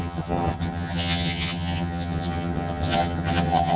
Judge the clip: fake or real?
fake